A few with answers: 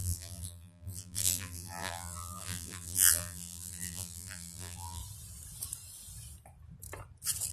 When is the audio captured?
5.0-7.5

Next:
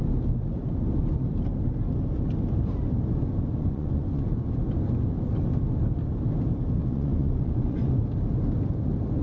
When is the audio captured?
0.0-3.5; 4.3-6.8; 8.0-9.2

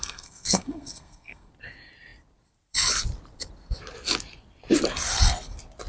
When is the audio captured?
1.5-5.9

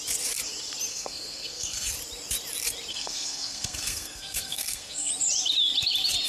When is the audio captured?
0.0-0.9; 1.9-2.9; 5.1-6.3

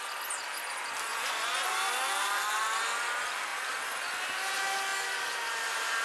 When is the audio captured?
0.0-1.1; 1.7-6.0

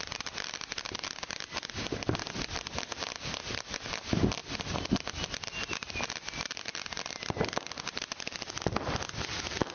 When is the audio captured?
0.0-9.7

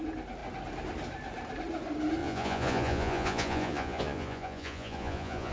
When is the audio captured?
0.0-2.2